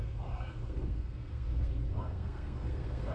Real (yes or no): no